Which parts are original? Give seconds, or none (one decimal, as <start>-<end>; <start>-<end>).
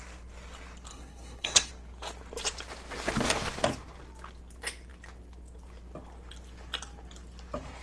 0.0-0.9; 1.7-7.8